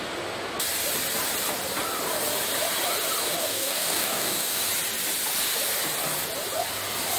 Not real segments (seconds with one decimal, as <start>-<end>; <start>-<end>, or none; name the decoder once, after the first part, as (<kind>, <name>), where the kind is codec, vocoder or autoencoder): 3.2-4.6 (codec, DAC)